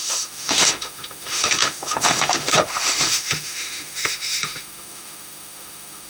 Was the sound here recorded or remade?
remade